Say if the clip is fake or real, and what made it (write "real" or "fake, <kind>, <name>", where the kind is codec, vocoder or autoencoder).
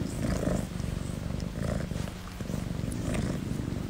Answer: real